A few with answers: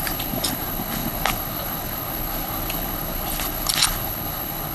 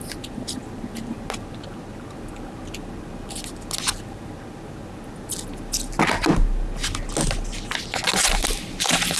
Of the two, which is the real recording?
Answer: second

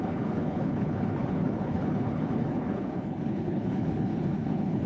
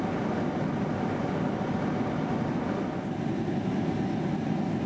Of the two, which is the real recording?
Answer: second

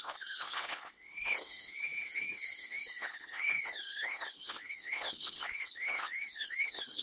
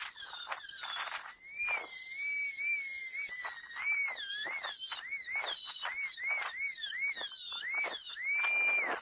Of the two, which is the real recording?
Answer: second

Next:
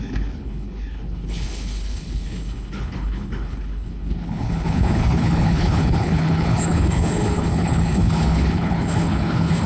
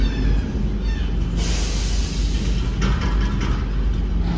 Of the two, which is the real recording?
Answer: second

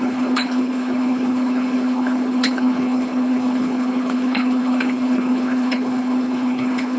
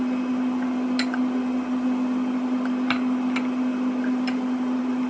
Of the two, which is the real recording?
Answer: second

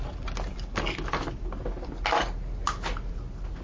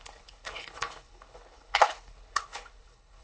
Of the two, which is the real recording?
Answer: first